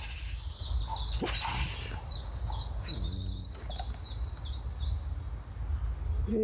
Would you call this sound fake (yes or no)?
no